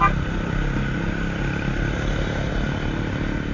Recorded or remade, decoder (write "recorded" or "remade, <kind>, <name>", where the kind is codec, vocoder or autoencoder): recorded